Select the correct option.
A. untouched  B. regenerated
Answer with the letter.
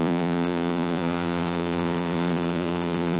B